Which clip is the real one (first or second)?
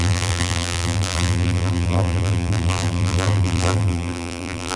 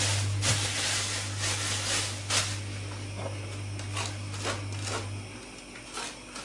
second